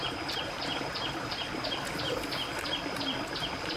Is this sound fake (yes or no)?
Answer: no